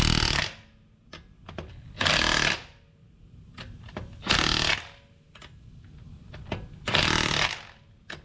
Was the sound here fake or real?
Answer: real